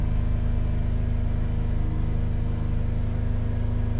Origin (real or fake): real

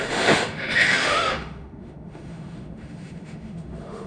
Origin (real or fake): fake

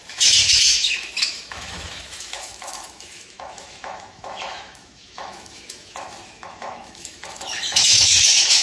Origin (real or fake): fake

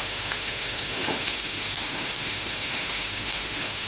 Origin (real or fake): fake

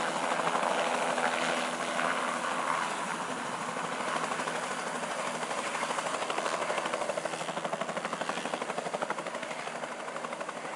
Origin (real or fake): real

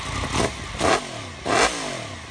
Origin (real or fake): real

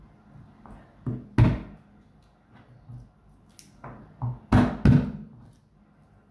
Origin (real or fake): real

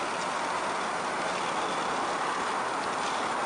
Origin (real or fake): real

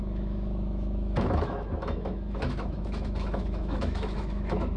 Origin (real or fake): fake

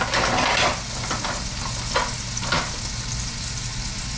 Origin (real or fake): real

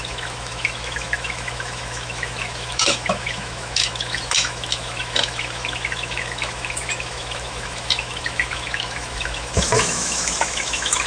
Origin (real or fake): fake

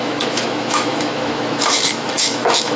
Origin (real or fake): fake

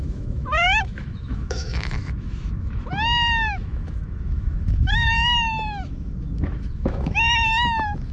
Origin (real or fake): fake